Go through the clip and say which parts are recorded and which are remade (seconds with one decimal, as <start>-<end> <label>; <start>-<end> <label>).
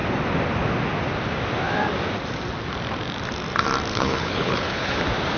0.0-3.9 recorded; 3.9-5.0 remade; 5.0-5.4 recorded